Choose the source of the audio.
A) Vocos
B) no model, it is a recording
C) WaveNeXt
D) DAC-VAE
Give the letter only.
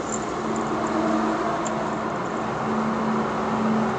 B